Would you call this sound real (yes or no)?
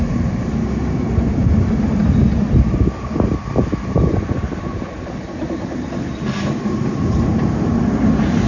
yes